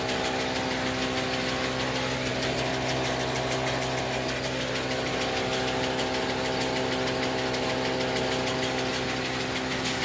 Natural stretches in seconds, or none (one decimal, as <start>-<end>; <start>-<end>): 0.0-10.0